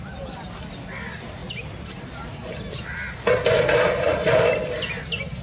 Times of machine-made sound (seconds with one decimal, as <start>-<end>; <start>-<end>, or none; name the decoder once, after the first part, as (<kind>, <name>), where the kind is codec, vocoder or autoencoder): none